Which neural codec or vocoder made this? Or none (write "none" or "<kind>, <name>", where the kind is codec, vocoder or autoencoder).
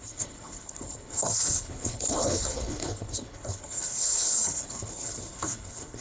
codec, HILCodec